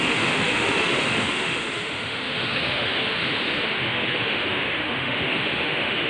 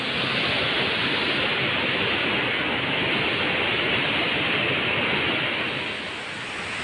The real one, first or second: second